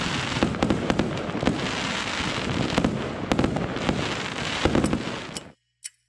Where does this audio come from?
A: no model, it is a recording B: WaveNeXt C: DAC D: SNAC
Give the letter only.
A